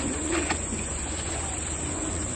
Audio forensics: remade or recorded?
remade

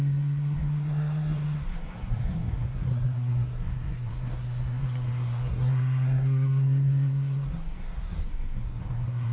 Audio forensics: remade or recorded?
remade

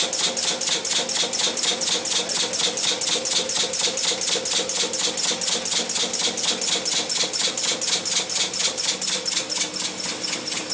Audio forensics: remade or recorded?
recorded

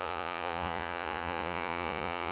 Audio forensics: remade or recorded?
remade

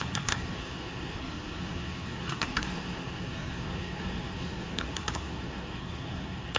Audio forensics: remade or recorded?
remade